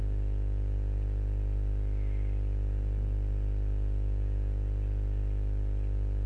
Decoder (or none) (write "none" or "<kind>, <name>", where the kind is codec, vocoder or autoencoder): none